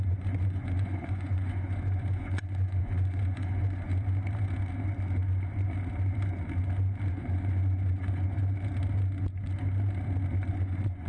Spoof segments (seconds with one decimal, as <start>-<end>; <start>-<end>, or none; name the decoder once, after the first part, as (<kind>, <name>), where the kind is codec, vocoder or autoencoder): 0.0-3.9 (vocoder, Vocos); 7.1-8.4; 10.5-11.1